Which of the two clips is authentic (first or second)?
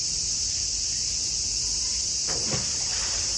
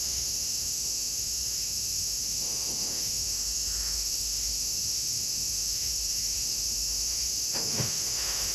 first